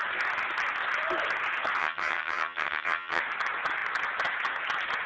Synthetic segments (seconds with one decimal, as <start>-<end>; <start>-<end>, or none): 1.8-3.2